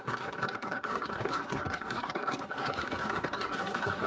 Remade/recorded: remade